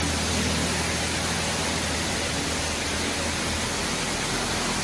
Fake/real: real